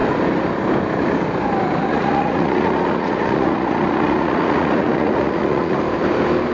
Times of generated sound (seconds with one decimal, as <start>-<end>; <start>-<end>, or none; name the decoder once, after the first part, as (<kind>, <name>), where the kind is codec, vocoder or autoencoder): 1.9-5.8 (vocoder, Vocos)